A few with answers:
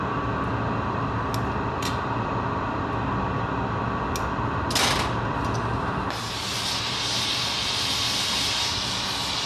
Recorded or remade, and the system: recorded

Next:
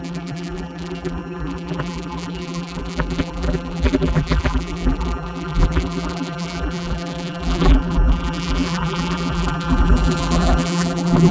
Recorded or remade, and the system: remade, vocoder, BigVGAN v2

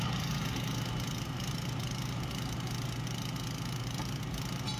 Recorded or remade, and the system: recorded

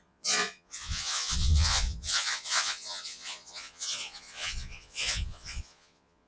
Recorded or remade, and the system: remade, vocoder, Vocos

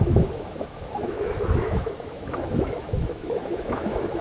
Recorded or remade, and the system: remade, autoencoder, DAC-VAE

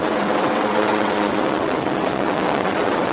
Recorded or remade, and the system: remade, vocoder, WaveNeXt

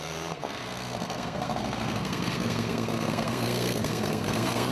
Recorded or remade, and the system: remade, codec, SNAC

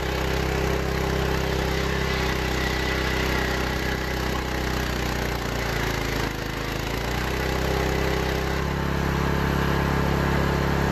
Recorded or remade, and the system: recorded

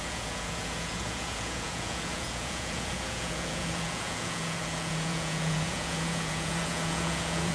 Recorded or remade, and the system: remade, vocoder, Vocos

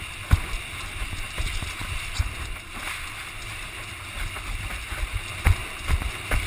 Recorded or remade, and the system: recorded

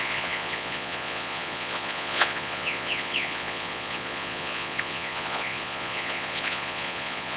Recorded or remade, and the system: remade, vocoder, Vocos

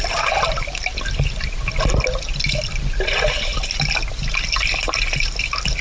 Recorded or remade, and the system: recorded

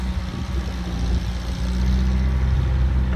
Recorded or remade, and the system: recorded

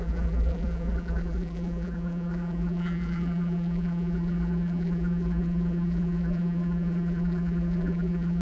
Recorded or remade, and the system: remade, vocoder, BigVGAN v2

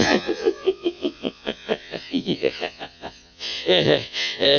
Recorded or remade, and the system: remade, vocoder, Vocos